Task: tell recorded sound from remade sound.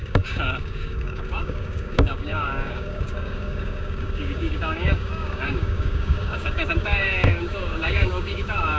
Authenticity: remade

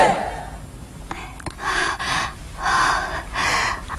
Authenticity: recorded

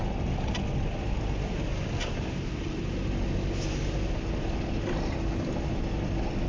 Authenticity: recorded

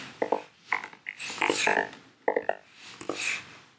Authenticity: recorded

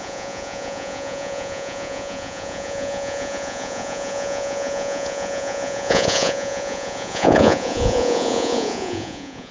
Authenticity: remade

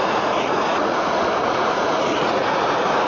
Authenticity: remade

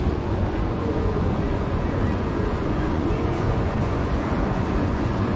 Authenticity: remade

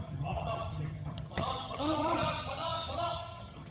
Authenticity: remade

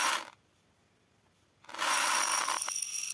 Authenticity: recorded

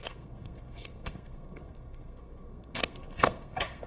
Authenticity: remade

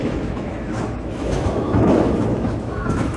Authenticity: remade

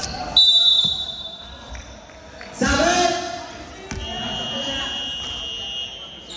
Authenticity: recorded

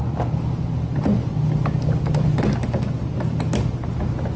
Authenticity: recorded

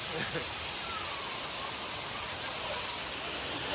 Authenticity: recorded